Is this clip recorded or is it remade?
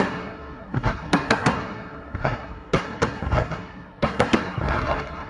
remade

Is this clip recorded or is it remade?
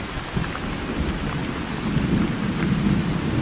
recorded